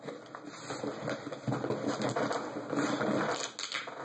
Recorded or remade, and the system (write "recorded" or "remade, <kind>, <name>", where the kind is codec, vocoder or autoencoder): recorded